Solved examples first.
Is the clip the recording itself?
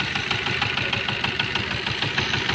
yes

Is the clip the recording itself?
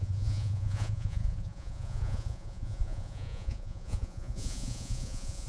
no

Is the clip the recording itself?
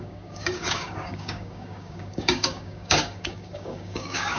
no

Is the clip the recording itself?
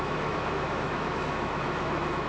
no